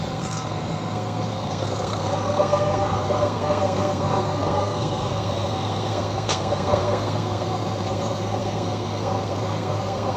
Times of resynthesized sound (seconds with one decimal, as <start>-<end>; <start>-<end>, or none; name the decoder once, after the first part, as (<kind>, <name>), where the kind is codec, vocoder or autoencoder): 0.0-10.2 (codec, SNAC)

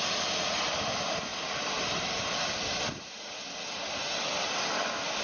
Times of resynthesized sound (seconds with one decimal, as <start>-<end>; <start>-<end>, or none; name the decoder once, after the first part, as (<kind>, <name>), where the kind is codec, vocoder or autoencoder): none

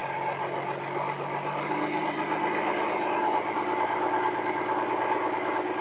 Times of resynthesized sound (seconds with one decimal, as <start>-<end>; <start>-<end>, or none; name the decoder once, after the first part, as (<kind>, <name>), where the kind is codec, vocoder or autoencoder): none